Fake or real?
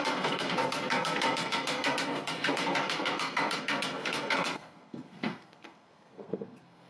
fake